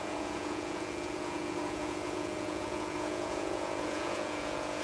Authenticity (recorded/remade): remade